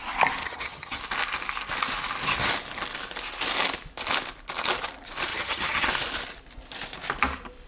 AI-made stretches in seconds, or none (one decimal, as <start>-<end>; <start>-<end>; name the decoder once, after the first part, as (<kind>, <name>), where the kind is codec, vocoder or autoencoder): 0.4-1.0 (vocoder, HiFi-GAN); 5.3-5.9